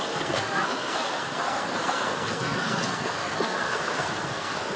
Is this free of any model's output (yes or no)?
no